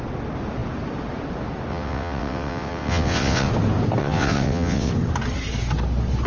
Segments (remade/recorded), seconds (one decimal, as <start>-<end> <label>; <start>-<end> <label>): 0.0-1.7 recorded; 1.7-3.5 remade; 3.5-4.0 recorded; 4.0-4.9 remade; 4.9-6.3 recorded